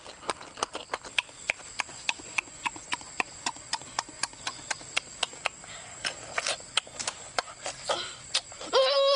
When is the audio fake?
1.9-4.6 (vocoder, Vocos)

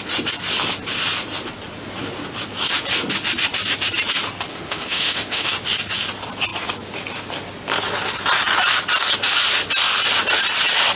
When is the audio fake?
4.5-5.5 (autoencoder, DAC-VAE)

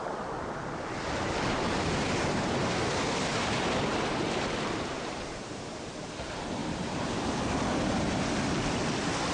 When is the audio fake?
4.9-6.1 (vocoder, BigVGAN v2); 6.6-7.4

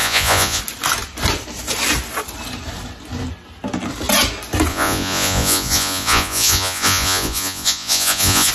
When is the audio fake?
0.0-0.6 (vocoder, Vocos); 4.7-8.5